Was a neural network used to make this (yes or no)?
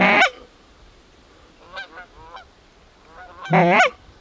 no